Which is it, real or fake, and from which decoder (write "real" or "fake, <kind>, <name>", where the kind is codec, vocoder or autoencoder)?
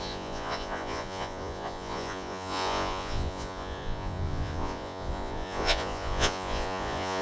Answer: fake, vocoder, Vocos